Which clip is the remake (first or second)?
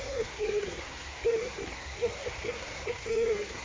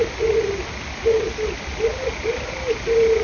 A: first